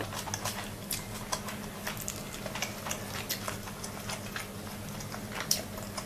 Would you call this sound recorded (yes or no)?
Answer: yes